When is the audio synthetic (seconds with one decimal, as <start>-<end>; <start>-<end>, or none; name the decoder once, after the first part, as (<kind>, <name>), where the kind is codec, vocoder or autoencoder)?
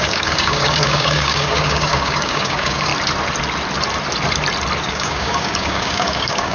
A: 0.0-2.9 (codec, DAC); 4.9-6.5